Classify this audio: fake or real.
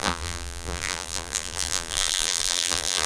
fake